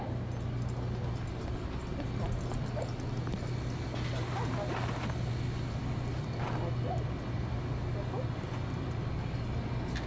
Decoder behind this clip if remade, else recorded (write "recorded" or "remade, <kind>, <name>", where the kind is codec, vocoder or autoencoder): recorded